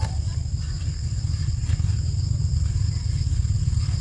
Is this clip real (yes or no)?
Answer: yes